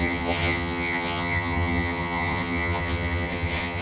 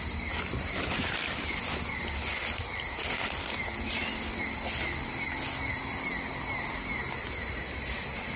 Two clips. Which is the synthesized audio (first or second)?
first